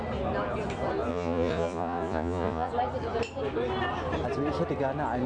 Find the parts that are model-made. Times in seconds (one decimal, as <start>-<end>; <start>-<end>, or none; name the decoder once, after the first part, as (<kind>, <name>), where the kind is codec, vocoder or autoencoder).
1.1-2.7 (vocoder, Vocos)